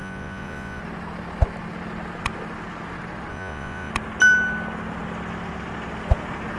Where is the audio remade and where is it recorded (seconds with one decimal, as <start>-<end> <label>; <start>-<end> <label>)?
0.0-0.8 remade; 0.8-3.3 recorded; 3.3-3.9 remade; 3.9-6.6 recorded